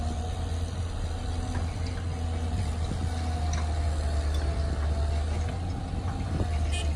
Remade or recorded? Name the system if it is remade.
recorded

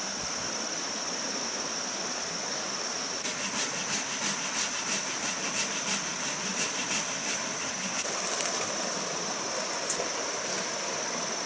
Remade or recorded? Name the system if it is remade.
recorded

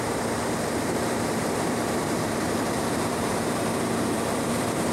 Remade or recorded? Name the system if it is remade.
remade, vocoder, BigVGAN v2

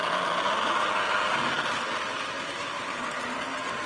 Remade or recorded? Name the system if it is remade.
recorded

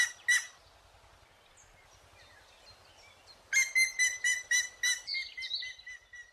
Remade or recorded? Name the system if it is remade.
recorded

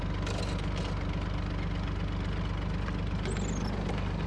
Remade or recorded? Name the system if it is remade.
recorded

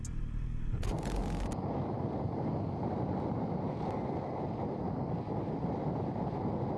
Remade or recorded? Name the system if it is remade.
recorded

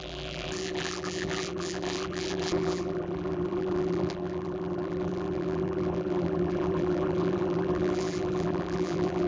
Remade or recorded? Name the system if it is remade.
remade, vocoder, BigVGAN v2